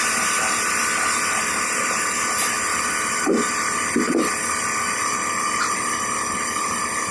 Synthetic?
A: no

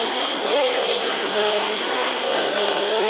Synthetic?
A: yes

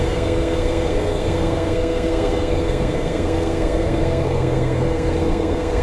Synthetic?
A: yes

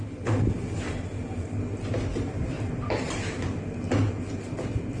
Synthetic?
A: no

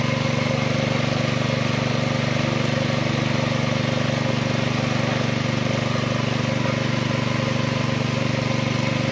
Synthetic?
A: no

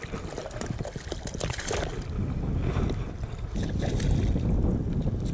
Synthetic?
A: no